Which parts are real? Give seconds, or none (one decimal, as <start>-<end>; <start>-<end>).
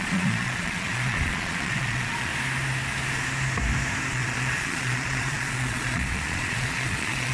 2.3-4.1